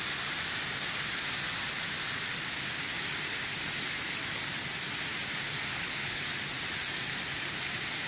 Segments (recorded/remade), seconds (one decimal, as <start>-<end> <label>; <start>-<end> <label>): 0.0-5.7 recorded; 5.7-6.2 remade; 6.2-8.1 recorded